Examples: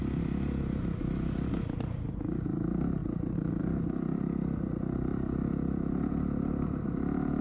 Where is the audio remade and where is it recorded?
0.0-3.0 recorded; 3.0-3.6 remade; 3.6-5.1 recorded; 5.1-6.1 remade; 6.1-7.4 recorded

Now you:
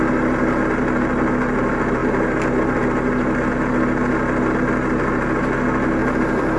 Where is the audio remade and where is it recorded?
0.0-6.0 recorded; 6.0-6.6 remade

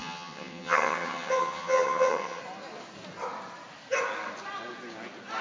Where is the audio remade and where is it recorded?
0.0-2.4 remade; 2.4-5.4 recorded

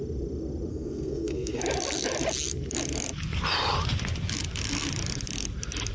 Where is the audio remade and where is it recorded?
0.0-0.7 recorded; 0.7-1.6 remade; 1.6-5.9 recorded

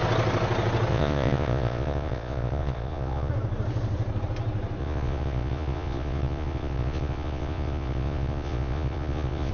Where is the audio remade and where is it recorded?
0.0-0.9 recorded; 0.9-3.3 remade; 3.3-4.8 recorded; 4.8-9.5 remade

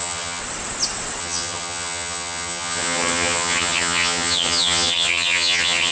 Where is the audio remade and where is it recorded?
0.0-0.4 remade; 0.4-1.2 recorded; 1.2-5.9 remade

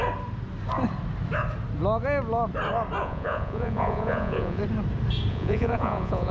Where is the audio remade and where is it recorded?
0.0-3.0 recorded; 3.0-4.6 remade; 4.6-5.3 recorded; 5.3-6.3 remade